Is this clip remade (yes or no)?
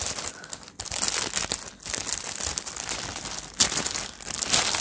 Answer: no